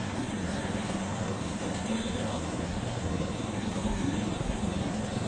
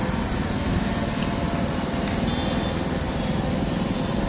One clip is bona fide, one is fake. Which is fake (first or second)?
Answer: first